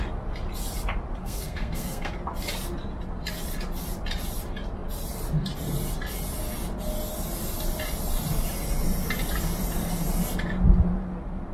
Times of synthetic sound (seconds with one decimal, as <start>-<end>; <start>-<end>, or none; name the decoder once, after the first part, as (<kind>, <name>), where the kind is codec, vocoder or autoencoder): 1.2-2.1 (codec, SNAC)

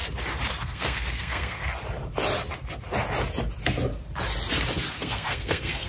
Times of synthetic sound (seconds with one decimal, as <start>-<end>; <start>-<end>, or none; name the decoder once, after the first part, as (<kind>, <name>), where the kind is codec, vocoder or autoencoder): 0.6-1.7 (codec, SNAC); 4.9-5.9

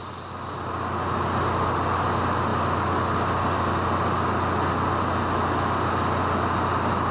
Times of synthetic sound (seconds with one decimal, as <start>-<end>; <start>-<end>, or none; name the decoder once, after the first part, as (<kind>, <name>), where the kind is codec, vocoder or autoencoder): none

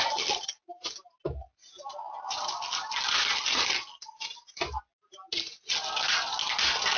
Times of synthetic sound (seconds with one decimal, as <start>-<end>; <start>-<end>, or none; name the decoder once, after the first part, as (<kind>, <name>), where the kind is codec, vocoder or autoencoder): none